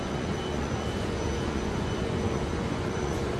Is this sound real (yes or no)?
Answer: no